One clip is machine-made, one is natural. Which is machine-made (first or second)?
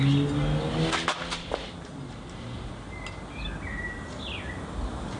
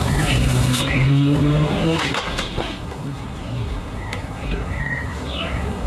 second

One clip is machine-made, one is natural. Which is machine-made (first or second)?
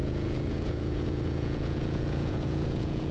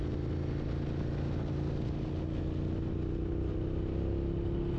first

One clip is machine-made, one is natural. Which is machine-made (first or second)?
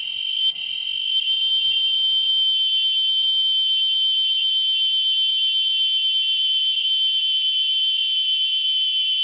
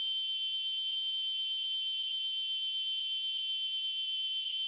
first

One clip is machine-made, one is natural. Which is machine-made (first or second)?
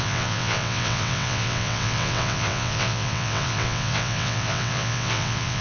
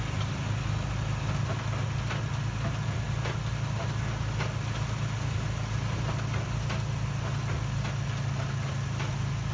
first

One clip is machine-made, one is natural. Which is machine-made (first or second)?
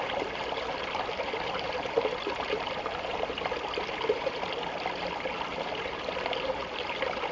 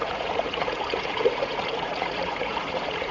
second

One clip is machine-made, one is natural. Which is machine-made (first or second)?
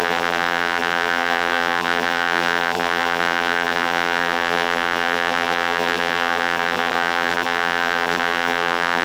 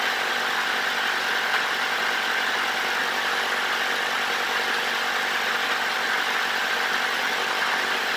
first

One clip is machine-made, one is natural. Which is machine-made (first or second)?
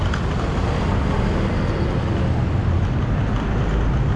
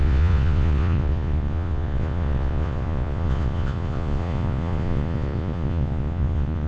second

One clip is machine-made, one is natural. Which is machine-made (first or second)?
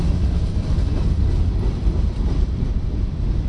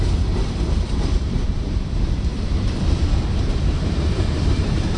second